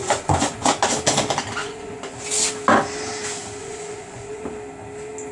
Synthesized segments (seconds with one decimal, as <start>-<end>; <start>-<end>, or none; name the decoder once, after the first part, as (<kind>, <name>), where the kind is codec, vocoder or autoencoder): 0.0-0.7 (vocoder, Vocos); 1.6-2.2; 3.6-4.4